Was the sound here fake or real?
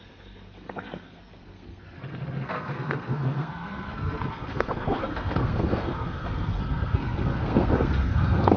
fake